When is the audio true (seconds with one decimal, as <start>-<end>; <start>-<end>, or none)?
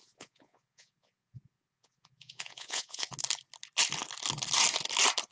3.2-5.3